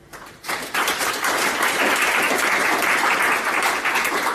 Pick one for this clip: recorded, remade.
remade